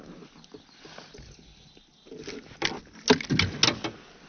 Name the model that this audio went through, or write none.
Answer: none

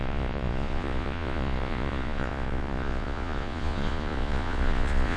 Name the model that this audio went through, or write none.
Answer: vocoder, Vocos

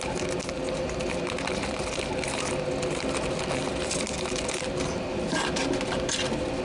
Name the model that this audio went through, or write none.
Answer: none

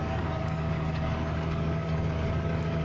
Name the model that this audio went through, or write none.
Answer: codec, DAC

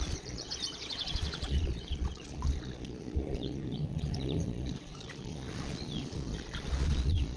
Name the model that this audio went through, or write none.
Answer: vocoder, Vocos